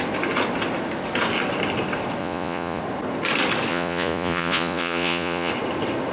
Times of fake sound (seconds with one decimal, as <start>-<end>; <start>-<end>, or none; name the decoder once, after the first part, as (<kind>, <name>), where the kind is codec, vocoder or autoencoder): 2.2-2.8 (vocoder, Vocos); 3.7-5.5

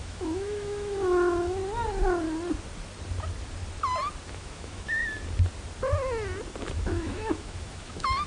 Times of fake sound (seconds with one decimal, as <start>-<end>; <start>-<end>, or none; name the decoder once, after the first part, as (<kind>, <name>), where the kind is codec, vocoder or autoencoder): 0.0-1.6 (autoencoder, DAC-VAE); 4.2-5.0; 6.6-8.3